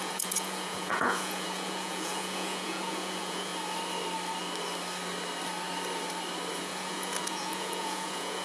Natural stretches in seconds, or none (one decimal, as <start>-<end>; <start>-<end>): 3.5-6.6